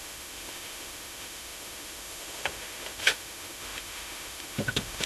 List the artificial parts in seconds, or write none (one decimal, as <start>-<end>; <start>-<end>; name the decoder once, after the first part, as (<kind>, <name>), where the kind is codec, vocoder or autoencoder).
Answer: 0.0-5.1 (autoencoder, DAC-VAE)